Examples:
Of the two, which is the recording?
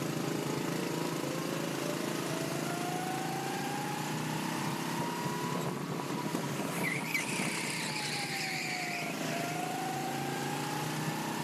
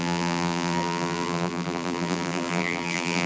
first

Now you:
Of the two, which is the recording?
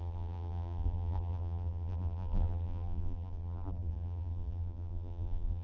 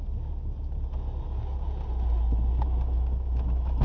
second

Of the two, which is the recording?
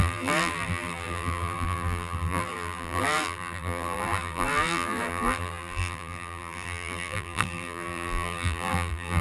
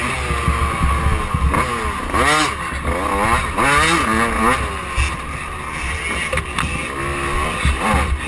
second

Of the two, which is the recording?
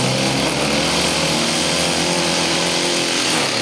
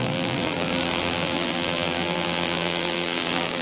first